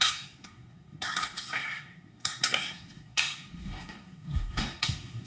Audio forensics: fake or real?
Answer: fake